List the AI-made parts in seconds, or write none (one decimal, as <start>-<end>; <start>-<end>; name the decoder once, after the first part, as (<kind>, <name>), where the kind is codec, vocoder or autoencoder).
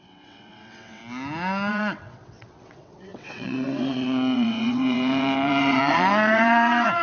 0.0-1.0 (vocoder, WaveNeXt); 1.7-7.0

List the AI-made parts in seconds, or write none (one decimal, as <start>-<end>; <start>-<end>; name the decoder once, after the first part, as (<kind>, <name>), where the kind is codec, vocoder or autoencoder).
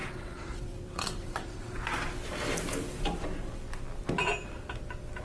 0.0-1.8 (vocoder, WaveNeXt)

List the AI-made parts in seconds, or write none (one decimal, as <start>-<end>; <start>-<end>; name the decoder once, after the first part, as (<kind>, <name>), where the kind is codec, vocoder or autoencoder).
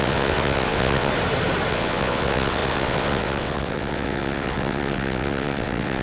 0.0-1.1 (vocoder, WaveNeXt); 1.7-6.0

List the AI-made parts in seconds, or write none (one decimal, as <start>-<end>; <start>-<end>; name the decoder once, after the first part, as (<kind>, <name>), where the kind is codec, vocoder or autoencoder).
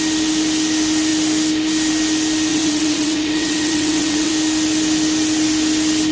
2.5-4.3 (vocoder, WaveNeXt)